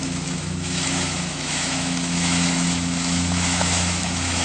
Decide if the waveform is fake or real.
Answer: fake